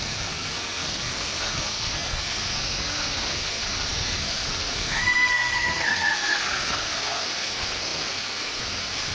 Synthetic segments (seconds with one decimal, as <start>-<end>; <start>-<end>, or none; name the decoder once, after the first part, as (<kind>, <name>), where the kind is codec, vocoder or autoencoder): 0.0-9.1 (codec, SNAC)